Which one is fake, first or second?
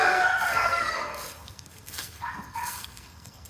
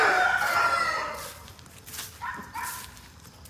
first